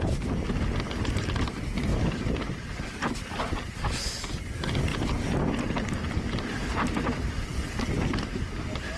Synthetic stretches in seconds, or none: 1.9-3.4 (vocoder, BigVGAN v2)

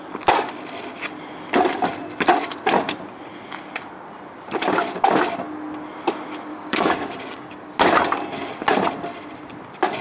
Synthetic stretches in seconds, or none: 6.5-7.5 (codec, DAC)

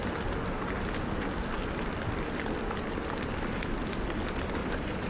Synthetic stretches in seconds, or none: 4.6-5.1 (vocoder, BigVGAN v2)